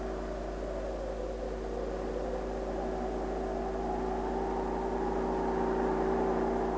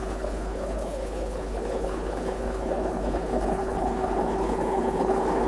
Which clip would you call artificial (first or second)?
second